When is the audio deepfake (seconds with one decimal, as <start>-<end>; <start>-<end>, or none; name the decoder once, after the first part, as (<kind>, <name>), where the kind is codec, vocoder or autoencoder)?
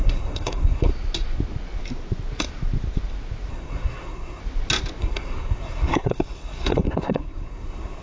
0.0-0.9 (codec, SNAC); 3.5-4.4; 5.0-8.0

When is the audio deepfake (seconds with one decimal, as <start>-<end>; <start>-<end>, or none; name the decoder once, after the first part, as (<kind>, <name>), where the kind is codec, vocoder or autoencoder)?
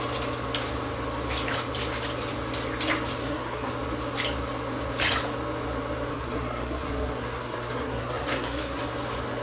3.2-3.7 (codec, SNAC); 6.1-8.8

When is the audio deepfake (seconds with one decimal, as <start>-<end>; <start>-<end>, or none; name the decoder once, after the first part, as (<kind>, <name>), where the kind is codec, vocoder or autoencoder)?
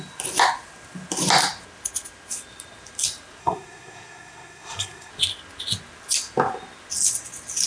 3.4-5.1 (codec, SNAC)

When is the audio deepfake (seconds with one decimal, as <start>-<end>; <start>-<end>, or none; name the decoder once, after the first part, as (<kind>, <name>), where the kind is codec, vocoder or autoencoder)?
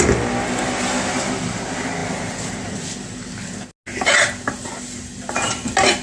none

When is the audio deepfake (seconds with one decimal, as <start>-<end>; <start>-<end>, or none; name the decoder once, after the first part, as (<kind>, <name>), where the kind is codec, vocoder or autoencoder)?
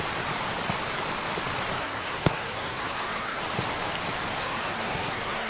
1.8-3.4 (codec, SNAC); 4.4-5.5